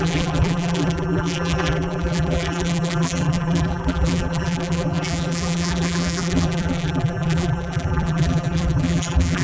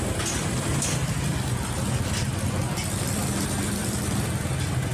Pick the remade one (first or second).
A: first